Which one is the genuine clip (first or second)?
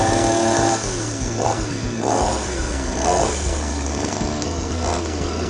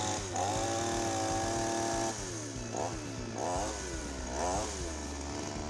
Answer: second